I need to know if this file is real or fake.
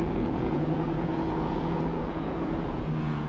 fake